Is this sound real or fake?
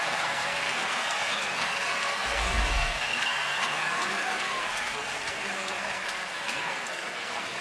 fake